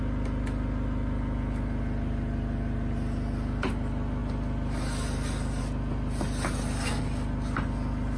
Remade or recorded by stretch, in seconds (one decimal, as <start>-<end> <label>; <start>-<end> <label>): 0.0-8.2 recorded